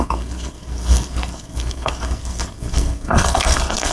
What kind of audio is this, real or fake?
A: fake